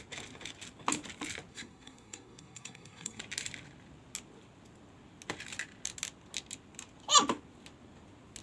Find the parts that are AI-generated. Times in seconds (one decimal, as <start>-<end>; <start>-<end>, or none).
1.5-3.2